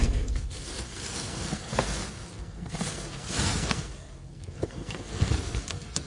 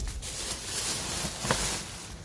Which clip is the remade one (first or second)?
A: first